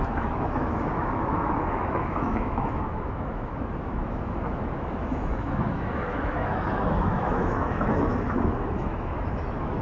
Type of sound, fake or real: fake